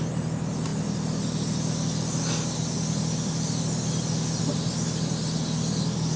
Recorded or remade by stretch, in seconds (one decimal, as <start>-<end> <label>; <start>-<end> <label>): 0.0-6.2 recorded